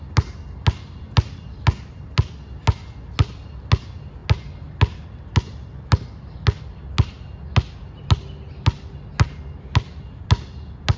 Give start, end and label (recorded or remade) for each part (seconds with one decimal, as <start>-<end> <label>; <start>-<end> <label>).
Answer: 0.0-11.0 recorded